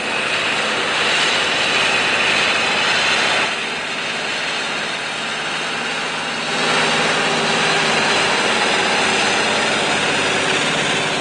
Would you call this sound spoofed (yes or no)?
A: no